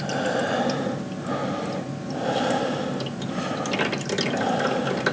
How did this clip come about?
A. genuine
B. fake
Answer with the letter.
A